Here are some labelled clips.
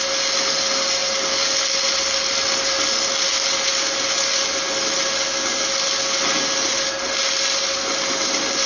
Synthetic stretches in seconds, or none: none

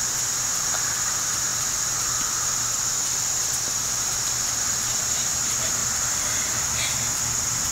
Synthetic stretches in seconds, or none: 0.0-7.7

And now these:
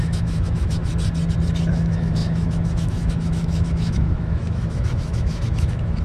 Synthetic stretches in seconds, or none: 0.0-0.9; 1.7-6.0

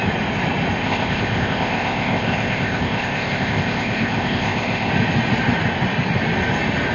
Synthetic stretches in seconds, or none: 0.8-4.9

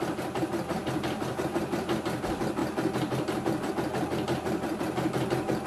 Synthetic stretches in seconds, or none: none

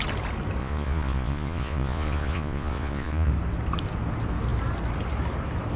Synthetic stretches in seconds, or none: 0.6-3.3

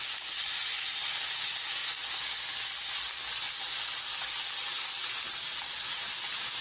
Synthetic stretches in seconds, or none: none